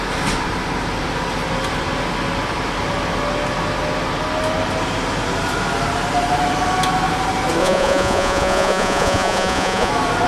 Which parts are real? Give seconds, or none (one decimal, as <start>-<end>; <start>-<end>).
0.0-7.6; 9.9-10.3